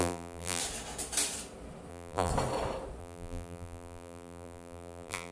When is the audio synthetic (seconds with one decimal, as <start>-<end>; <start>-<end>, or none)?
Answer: 0.0-0.6; 1.9-2.3; 3.0-5.3